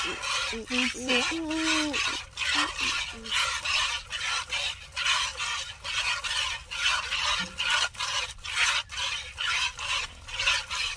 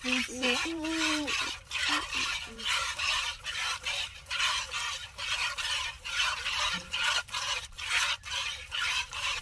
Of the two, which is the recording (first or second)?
first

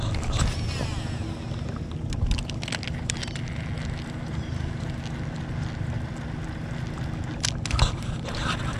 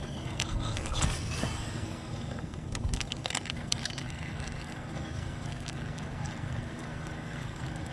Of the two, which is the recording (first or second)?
first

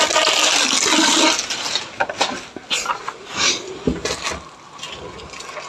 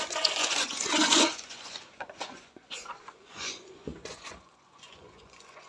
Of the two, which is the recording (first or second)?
first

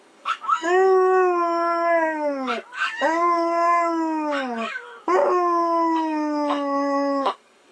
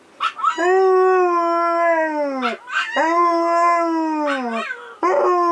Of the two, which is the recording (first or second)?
second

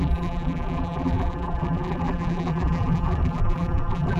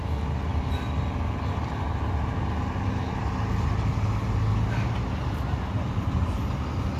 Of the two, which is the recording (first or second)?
second